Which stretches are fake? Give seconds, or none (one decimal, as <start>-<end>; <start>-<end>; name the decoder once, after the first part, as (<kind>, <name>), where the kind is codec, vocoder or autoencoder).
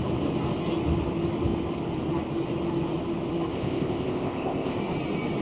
3.5-4.8 (codec, ZipCodec)